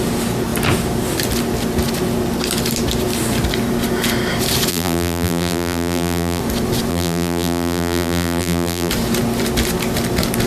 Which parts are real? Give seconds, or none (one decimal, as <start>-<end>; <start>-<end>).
0.0-4.7; 6.4-6.9; 8.9-10.5